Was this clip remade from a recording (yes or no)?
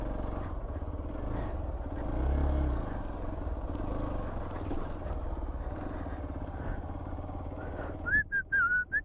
no